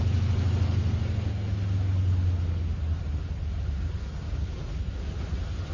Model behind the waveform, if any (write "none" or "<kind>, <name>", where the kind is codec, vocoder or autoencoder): none